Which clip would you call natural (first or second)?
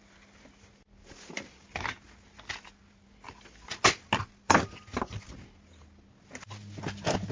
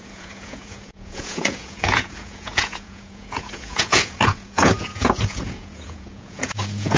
first